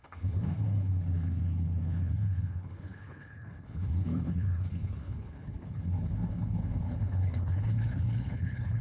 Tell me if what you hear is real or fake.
fake